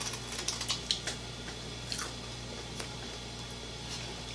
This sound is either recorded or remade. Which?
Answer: recorded